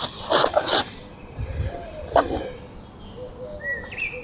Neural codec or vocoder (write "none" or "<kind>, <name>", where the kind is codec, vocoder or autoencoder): none